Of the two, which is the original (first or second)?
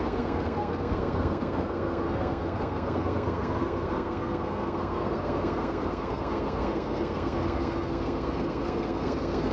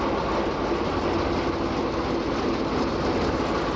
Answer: second